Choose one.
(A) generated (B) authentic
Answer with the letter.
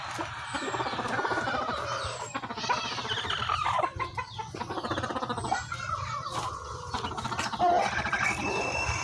B